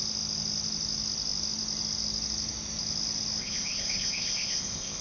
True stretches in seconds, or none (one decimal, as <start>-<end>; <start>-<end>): 0.0-3.4